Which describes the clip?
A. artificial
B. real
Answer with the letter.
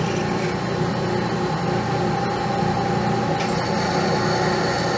B